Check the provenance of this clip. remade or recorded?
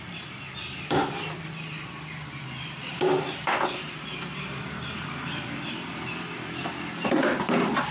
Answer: remade